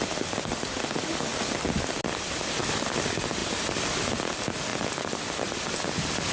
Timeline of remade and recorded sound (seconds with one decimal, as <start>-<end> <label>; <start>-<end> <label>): 0.0-6.3 recorded

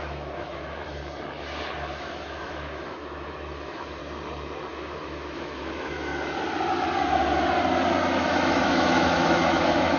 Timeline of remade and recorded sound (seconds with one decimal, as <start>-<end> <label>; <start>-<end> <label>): 0.0-1.0 remade; 1.0-2.0 recorded; 2.0-4.0 remade; 4.0-4.7 recorded; 4.7-6.1 remade; 6.1-8.5 recorded; 8.5-10.0 remade

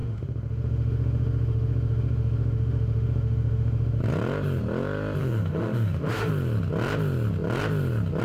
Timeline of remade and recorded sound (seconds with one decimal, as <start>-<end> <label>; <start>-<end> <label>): 0.0-4.0 remade; 4.0-5.2 recorded; 5.2-6.3 remade; 6.3-8.2 recorded

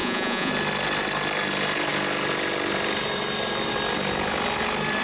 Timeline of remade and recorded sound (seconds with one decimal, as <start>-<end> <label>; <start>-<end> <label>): 0.0-0.5 remade; 0.5-5.0 recorded

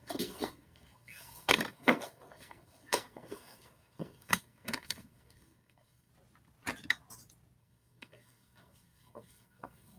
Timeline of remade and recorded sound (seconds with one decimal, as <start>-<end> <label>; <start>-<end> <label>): 0.0-6.1 remade; 6.1-7.6 recorded; 7.6-10.0 remade